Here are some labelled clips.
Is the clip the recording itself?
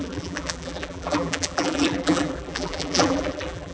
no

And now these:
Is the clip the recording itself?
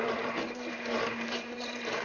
no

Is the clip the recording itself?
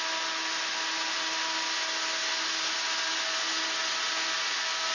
yes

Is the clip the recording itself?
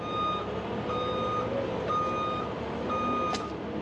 yes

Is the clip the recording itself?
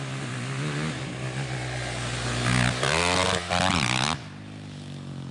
yes